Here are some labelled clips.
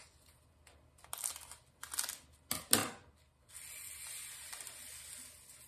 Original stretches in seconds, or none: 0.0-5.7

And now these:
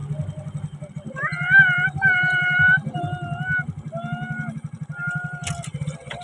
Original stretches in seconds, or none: 0.0-1.3; 3.0-6.2